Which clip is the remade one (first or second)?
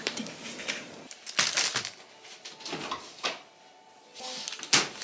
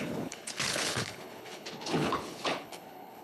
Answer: second